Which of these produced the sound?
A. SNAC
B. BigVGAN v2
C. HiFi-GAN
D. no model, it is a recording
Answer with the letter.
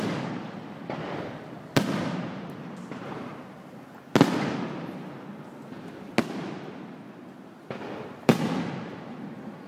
D